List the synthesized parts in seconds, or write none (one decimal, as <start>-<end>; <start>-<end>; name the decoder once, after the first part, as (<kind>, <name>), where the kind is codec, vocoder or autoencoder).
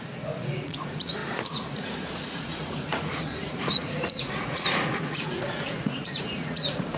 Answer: 0.0-7.0 (vocoder, Vocos)